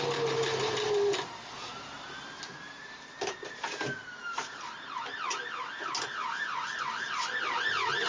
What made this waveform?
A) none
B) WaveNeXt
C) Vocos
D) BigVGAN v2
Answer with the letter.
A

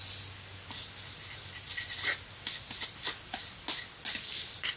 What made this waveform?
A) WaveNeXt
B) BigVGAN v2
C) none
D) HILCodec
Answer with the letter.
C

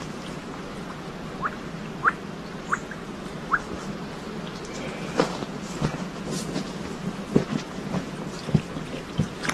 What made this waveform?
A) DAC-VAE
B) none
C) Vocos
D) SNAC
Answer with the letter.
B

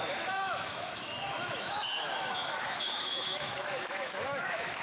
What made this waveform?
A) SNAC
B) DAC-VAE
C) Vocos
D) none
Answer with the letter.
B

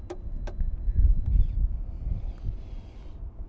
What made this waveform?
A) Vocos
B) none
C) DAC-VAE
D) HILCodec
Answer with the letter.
B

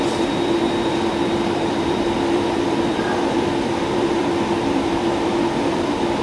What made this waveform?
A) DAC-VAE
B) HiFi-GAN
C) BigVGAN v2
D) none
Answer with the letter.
C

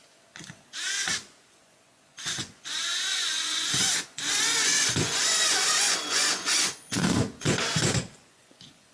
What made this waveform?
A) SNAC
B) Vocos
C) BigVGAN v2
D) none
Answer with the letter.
B